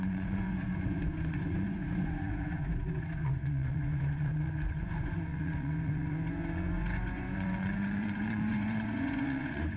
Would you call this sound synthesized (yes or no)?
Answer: yes